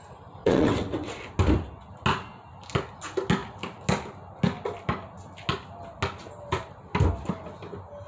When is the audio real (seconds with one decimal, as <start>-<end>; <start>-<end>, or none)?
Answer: 0.0-0.4; 1.1-8.1